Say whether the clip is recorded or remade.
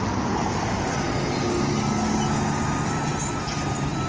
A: recorded